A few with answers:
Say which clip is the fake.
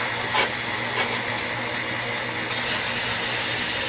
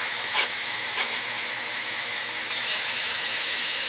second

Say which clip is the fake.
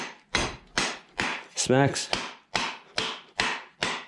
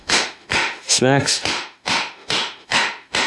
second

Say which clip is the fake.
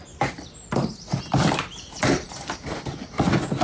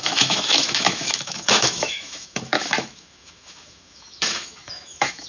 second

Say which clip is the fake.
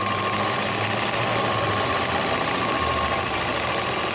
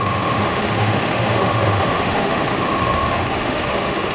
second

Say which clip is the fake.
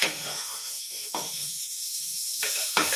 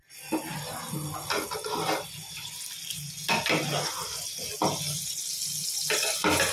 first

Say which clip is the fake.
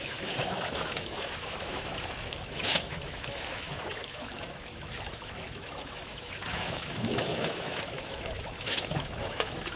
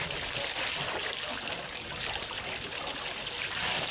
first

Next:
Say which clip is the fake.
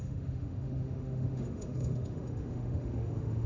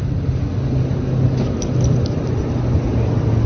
first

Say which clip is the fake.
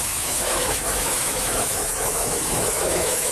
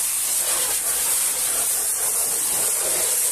first